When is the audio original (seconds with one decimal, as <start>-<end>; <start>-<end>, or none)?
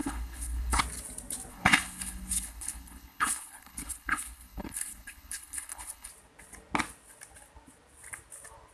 0.8-1.5; 6.1-8.7